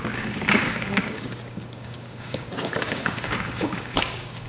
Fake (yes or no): yes